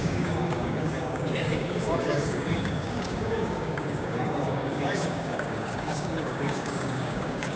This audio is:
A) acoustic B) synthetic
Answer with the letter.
B